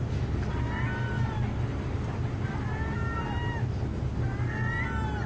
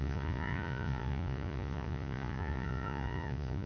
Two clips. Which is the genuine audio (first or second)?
first